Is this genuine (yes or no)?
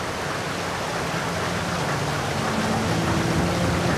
yes